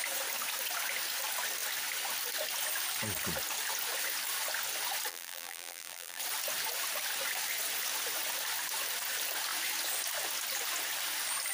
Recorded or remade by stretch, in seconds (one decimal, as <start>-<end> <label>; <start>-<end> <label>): 0.0-5.1 recorded; 5.1-6.2 remade; 6.2-11.5 recorded